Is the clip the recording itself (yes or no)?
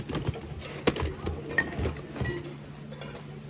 yes